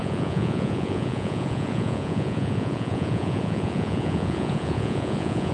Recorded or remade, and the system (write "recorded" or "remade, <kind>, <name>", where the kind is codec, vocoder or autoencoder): remade, vocoder, Vocos